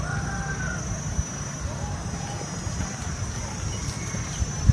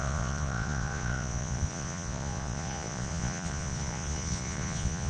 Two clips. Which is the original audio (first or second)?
first